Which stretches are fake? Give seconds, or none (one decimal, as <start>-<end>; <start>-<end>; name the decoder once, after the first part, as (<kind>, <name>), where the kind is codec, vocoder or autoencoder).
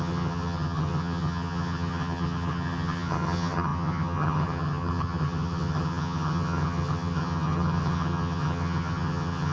0.0-9.5 (vocoder, HiFi-GAN)